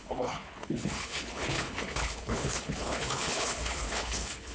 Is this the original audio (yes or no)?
no